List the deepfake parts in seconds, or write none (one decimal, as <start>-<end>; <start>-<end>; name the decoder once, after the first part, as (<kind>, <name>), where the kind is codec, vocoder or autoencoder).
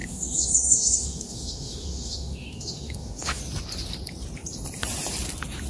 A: 0.0-3.4 (autoencoder, DAC-VAE)